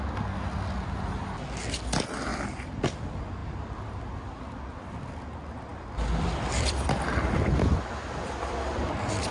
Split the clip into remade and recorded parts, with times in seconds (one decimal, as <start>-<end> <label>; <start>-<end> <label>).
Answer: 0.0-3.4 recorded; 3.4-4.0 remade; 4.0-5.7 recorded; 5.7-9.3 remade